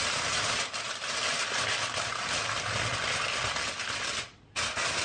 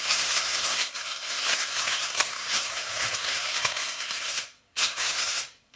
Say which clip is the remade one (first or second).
second